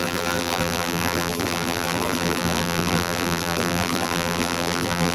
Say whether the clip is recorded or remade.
remade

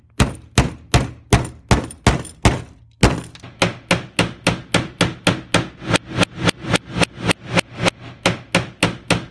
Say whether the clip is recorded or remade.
recorded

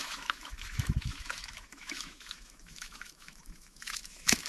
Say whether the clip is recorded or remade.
remade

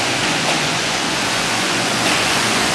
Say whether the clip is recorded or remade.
remade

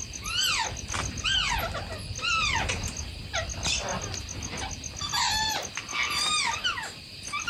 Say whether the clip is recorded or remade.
recorded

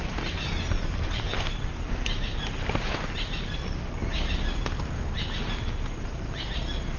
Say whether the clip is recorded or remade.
recorded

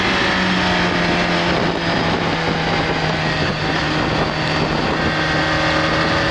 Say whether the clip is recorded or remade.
recorded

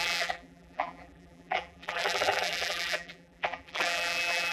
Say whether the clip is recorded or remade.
remade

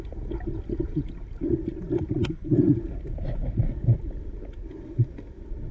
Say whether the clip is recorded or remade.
recorded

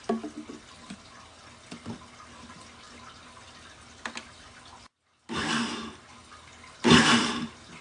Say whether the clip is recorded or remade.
recorded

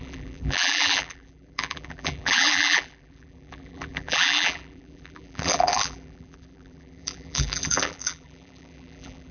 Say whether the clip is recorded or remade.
remade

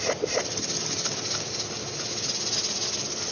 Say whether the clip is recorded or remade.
recorded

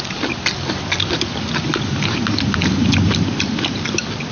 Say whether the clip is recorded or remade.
recorded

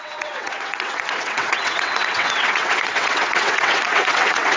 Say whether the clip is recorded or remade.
remade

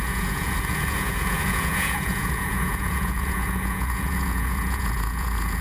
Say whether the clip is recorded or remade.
remade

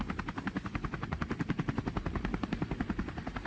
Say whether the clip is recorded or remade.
remade